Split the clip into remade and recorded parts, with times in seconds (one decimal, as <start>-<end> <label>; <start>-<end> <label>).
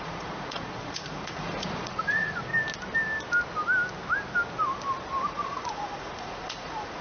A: 0.0-2.5 remade; 2.5-5.2 recorded; 5.2-7.0 remade